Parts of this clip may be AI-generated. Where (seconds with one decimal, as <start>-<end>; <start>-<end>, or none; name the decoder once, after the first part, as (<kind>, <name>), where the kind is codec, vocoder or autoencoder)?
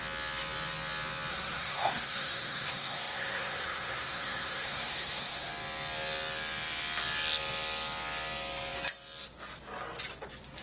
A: 1.3-5.5 (codec, SNAC)